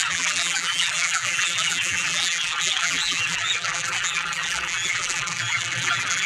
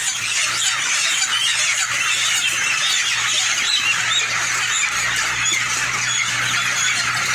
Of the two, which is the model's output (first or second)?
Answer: first